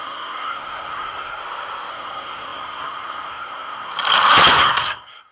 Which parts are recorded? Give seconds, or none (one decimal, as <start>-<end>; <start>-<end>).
1.4-1.9; 3.9-4.5